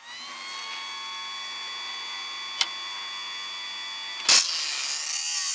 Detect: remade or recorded recorded